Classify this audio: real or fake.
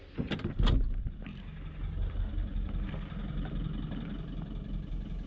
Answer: real